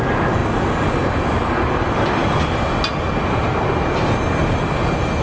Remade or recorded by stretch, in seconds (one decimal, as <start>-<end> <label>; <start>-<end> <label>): 0.0-5.2 recorded